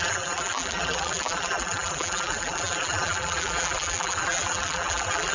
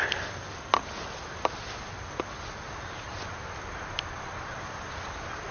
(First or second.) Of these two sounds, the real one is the second